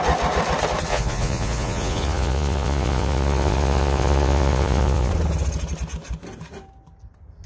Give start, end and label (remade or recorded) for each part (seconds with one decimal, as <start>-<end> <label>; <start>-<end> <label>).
0.0-0.9 recorded; 0.9-5.1 remade; 5.1-7.5 recorded